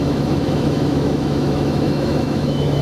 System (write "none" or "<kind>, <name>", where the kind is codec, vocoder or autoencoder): autoencoder, DAC-VAE